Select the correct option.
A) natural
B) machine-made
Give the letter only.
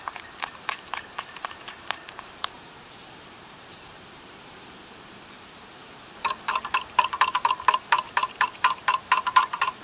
B